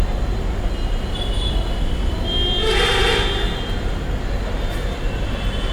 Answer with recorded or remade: recorded